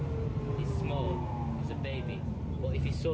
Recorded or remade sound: recorded